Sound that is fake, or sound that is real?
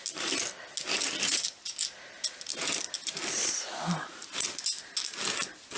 real